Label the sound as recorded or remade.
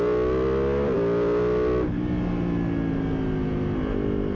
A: recorded